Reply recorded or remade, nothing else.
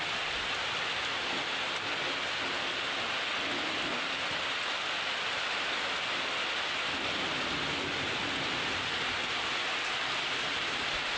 recorded